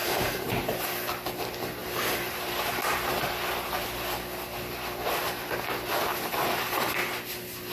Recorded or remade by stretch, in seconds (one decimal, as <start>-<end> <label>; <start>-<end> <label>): 0.0-0.9 remade; 0.9-1.8 recorded; 1.8-2.8 remade; 2.8-6.1 recorded; 6.1-6.9 remade; 6.9-7.7 recorded